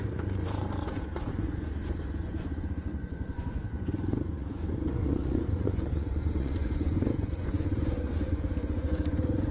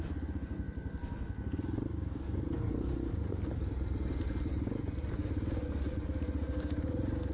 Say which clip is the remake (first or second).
first